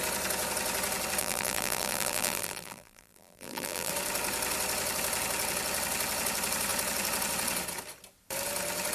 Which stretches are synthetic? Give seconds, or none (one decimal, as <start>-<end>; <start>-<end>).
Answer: 1.2-3.9